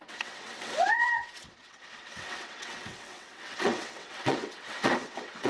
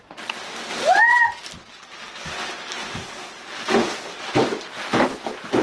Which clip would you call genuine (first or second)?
second